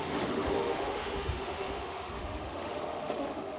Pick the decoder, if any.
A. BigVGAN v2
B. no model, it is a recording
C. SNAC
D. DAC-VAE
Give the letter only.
D